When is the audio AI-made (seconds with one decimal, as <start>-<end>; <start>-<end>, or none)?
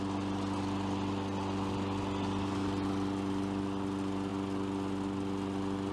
none